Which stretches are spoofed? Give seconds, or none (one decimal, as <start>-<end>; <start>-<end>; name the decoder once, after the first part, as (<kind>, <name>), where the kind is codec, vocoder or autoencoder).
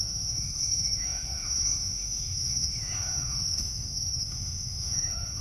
0.0-5.4 (autoencoder, DAC-VAE)